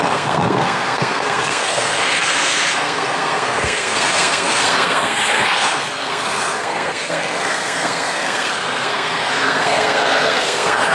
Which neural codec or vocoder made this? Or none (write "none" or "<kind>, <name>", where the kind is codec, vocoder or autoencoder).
codec, SNAC